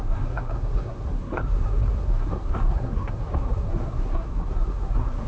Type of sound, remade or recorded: remade